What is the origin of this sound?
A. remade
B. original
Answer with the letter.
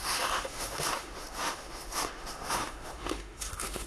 A